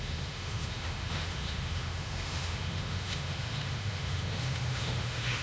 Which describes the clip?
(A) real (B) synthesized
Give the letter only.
B